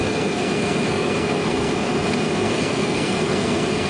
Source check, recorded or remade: remade